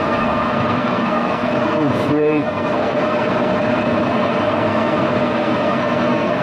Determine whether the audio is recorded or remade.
remade